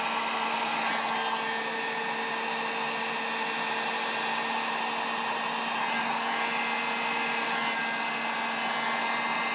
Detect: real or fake real